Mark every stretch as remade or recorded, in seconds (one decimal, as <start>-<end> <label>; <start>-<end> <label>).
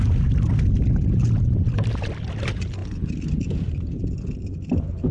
0.0-5.1 recorded